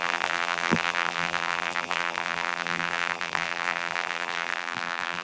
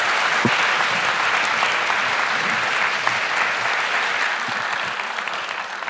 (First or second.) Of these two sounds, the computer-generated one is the first